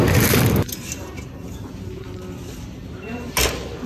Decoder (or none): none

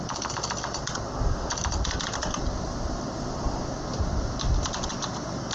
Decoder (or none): none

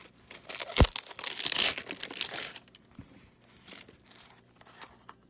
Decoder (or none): none